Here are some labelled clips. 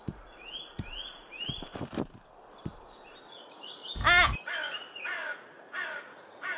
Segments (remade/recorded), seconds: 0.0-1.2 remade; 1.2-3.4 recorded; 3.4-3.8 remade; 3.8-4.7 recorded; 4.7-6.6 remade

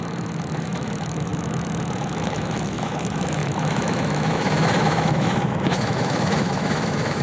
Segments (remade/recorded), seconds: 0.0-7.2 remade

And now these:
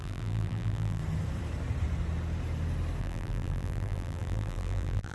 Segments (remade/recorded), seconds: 0.0-1.0 remade; 1.0-3.0 recorded; 3.0-5.1 remade

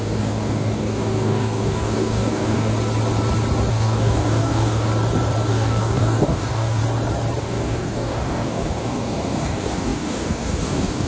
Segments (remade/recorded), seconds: 0.0-2.7 remade; 2.7-3.7 recorded; 3.7-4.9 remade; 4.9-5.5 recorded; 5.5-6.8 remade; 6.8-7.4 recorded; 7.4-11.1 remade